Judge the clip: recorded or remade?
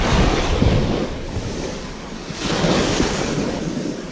remade